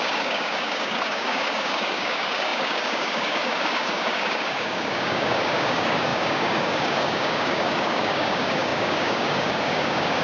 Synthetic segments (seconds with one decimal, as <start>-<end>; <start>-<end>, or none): 0.0-10.2